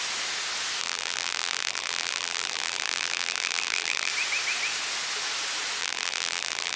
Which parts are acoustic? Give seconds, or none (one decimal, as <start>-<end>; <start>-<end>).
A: 0.0-0.8; 4.1-5.8

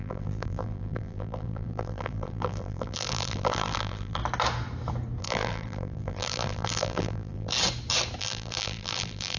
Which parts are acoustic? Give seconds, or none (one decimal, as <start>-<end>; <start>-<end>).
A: 4.2-5.2; 7.5-8.2